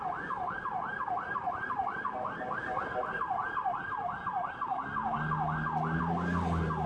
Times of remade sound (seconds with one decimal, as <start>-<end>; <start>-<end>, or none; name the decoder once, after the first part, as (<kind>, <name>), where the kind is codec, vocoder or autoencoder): none